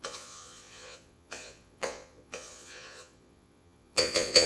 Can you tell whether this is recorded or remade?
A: remade